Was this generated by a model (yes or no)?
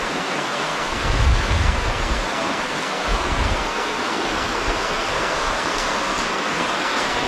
yes